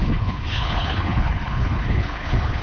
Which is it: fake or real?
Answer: fake